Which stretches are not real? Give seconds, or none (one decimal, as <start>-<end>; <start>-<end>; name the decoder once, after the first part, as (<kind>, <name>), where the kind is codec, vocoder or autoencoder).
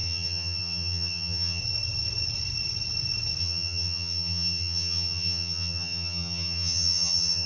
0.0-1.6 (vocoder, HiFi-GAN); 3.4-7.5